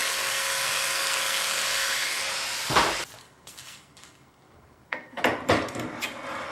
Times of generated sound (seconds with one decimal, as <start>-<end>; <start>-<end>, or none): 0.0-2.2; 3.2-5.2